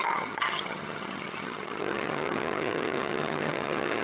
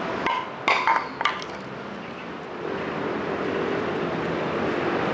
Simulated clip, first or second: first